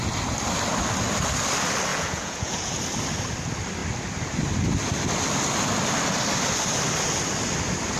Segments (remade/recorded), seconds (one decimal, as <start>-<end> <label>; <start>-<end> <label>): 0.0-1.9 recorded; 1.9-2.8 remade; 2.8-8.0 recorded